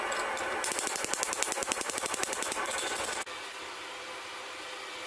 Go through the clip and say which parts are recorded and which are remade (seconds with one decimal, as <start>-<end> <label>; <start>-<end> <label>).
0.0-1.6 recorded; 1.6-2.7 remade; 2.7-5.1 recorded